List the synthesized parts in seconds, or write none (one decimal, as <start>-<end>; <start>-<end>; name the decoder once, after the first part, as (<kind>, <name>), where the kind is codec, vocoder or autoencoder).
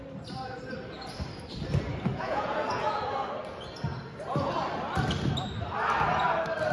2.1-3.0 (vocoder, Vocos)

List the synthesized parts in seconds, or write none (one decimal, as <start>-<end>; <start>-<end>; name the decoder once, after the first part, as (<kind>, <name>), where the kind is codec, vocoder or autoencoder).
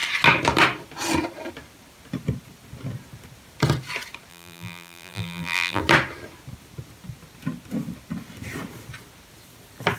4.3-5.8 (vocoder, BigVGAN v2)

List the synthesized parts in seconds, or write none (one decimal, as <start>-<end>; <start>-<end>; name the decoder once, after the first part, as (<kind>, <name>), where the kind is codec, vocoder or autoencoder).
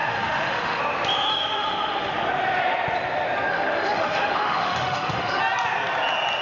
0.0-0.8 (autoencoder, DAC-VAE); 1.3-2.1; 3.5-5.4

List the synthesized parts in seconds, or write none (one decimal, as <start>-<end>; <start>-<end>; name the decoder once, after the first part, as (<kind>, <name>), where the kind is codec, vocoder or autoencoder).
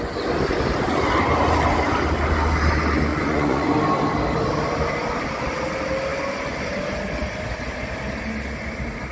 3.1-3.7 (vocoder, Vocos)